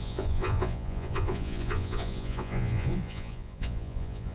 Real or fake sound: fake